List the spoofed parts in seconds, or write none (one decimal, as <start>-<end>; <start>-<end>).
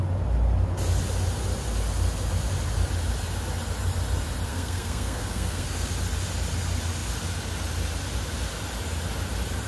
4.5-5.9